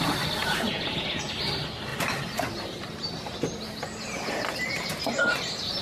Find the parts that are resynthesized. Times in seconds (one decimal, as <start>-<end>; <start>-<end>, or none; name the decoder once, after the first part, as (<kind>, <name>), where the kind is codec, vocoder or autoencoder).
0.4-1.3 (vocoder, Vocos)

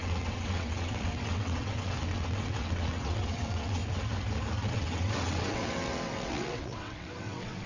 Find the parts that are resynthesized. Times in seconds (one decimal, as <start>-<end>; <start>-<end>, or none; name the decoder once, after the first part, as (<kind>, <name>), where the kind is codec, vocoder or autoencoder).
0.0-3.8 (vocoder, WaveNeXt); 4.7-7.7

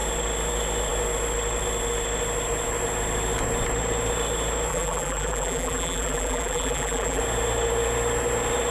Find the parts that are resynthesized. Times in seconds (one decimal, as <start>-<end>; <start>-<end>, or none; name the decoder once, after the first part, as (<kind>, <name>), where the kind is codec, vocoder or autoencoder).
4.7-7.2 (vocoder, BigVGAN v2)

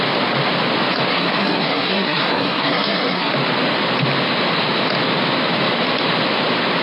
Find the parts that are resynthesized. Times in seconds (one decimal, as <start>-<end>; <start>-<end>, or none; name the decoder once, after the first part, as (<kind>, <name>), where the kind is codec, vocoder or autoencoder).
1.1-3.3 (codec, SNAC)